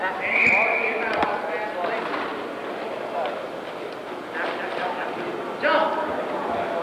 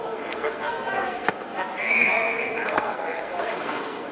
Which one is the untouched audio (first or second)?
first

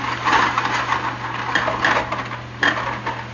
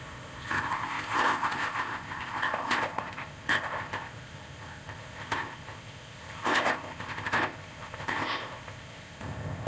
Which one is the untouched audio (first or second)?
first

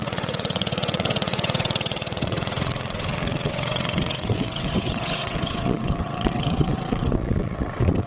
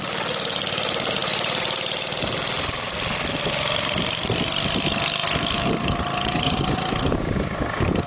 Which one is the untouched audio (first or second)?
second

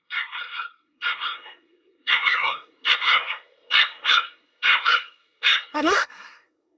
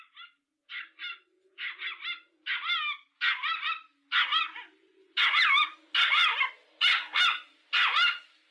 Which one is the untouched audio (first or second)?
second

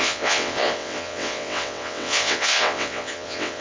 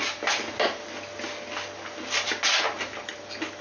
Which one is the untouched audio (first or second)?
second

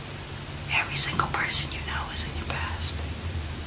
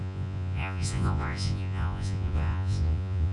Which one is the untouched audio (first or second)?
first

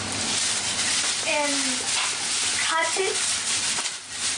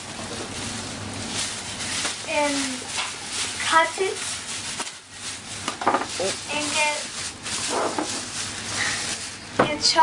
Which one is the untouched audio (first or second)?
second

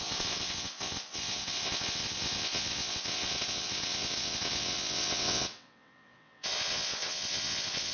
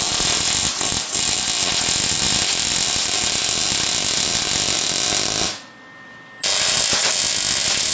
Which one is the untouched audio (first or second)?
second